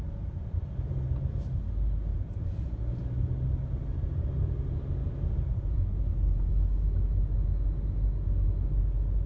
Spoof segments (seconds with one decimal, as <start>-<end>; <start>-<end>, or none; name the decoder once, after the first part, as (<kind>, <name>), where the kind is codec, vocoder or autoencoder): 2.1-2.8 (vocoder, Vocos); 5.0-6.5